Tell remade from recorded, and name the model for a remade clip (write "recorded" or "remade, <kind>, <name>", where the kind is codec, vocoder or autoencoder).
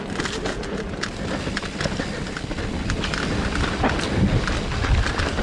recorded